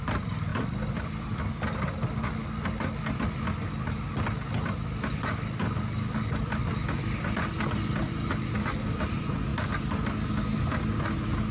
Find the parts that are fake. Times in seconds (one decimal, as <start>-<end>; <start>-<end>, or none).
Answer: none